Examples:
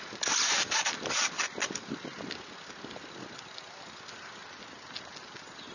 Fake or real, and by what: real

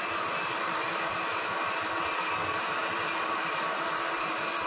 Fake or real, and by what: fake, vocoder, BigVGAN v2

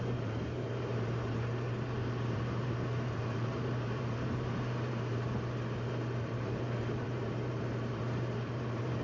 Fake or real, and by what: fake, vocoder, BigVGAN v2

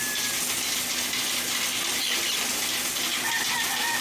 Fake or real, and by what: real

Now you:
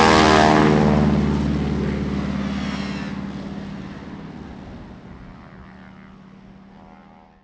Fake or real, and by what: real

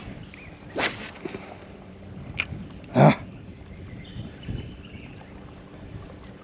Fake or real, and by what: fake, vocoder, BigVGAN v2